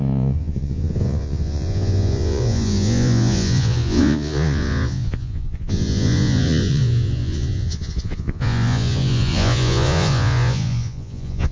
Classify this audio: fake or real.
fake